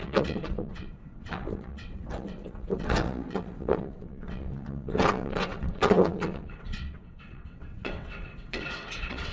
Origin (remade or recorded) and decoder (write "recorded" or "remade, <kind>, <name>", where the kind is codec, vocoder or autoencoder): remade, vocoder, WaveNeXt